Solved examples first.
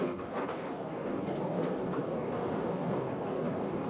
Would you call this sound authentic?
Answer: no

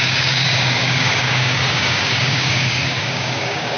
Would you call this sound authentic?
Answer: no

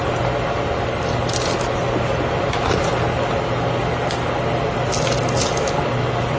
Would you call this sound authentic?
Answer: yes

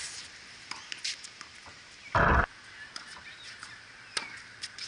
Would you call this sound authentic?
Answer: yes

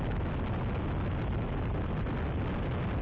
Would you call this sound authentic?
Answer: yes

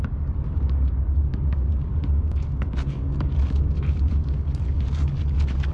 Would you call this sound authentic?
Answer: no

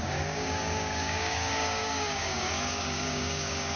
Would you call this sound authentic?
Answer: no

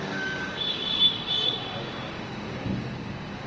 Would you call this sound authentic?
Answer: no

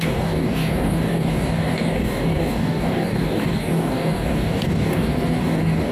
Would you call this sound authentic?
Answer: no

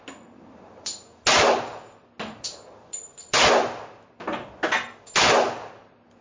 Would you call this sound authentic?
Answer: yes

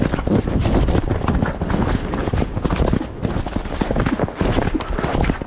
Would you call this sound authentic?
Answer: yes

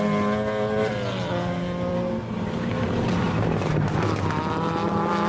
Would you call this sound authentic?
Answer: yes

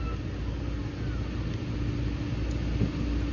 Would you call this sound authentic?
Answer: yes